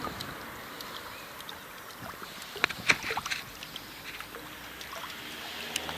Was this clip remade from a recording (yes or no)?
no